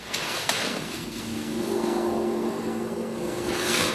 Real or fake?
fake